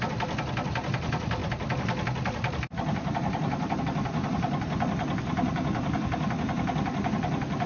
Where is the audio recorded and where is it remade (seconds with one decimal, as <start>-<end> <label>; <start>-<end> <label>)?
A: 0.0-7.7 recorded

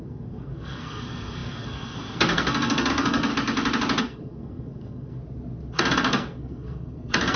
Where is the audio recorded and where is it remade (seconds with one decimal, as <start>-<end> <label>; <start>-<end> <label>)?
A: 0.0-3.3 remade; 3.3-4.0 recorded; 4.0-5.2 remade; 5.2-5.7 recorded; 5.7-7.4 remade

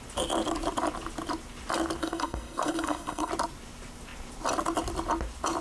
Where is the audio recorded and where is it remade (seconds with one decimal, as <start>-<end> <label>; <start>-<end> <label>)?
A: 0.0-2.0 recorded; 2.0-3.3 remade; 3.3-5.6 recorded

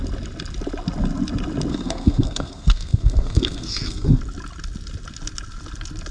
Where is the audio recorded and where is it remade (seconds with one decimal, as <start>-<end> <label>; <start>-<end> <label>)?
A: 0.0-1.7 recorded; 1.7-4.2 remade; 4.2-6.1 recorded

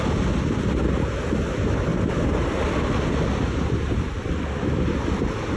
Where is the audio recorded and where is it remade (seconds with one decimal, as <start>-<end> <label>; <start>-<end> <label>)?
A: 0.0-5.6 recorded